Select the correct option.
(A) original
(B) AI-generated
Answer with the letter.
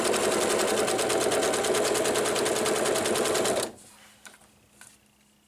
A